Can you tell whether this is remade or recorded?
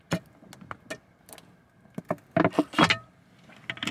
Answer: recorded